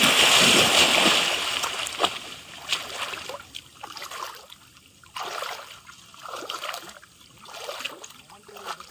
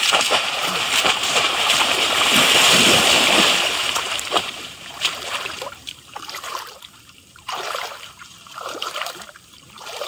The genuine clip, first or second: first